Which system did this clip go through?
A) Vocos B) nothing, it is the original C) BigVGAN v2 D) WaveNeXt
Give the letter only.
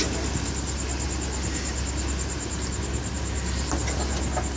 B